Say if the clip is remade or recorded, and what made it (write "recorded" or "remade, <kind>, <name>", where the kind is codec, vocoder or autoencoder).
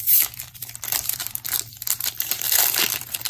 remade, vocoder, BigVGAN v2